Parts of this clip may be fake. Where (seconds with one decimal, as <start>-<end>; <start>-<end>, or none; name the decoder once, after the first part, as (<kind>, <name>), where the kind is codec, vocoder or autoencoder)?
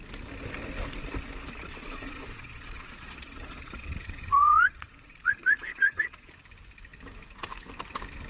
1.6-6.3 (vocoder, Vocos)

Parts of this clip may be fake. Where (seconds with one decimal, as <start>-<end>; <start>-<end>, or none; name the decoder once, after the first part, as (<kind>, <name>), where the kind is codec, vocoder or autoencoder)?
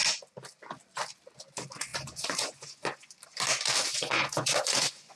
1.9-3.1 (vocoder, Vocos); 3.9-5.2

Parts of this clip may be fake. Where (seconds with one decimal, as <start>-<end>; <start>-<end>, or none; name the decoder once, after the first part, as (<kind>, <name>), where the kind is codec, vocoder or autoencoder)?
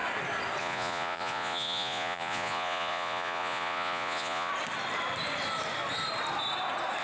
0.6-4.5 (vocoder, Vocos)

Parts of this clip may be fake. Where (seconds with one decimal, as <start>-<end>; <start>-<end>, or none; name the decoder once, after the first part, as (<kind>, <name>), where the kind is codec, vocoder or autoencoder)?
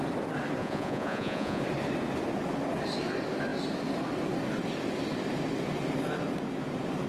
0.6-1.6 (vocoder, Vocos)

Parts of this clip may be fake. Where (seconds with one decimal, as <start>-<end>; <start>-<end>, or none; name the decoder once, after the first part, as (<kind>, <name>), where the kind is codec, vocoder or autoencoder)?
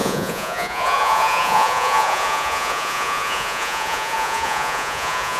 0.0-5.4 (vocoder, Vocos)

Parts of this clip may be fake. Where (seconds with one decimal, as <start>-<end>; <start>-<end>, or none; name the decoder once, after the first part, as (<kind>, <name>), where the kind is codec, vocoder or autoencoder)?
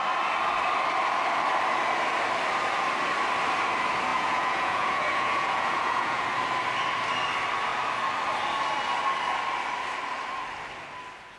4.1-6.2 (vocoder, Vocos)